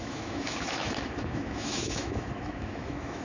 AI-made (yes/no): yes